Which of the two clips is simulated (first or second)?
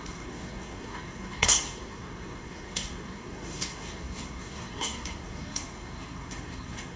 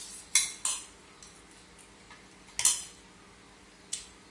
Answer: first